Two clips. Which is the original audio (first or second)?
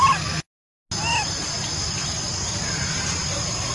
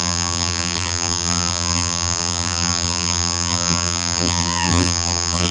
first